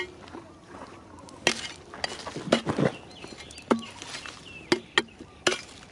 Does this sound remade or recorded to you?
recorded